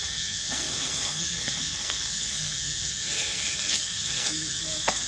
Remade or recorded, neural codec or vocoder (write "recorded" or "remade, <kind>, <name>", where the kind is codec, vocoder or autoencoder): remade, codec, SNAC